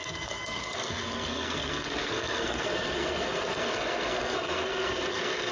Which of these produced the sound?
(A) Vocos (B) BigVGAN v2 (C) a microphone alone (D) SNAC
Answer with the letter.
D